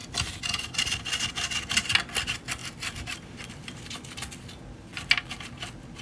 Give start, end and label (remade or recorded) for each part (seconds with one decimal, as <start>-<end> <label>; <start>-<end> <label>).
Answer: 0.0-2.6 recorded; 2.6-3.9 remade; 3.9-6.0 recorded